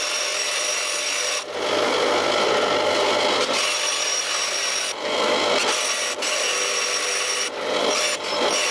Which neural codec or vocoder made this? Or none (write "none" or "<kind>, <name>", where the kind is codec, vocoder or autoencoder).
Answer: none